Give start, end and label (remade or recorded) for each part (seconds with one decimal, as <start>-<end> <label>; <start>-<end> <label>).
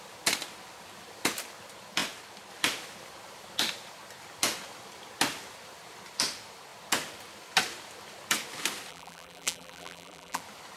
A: 0.0-8.9 recorded; 8.9-10.4 remade; 10.4-10.8 recorded